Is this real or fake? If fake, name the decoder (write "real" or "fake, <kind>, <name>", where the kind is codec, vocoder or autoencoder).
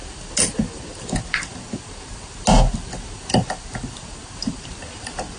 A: real